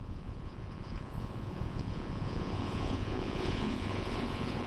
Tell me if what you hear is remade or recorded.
remade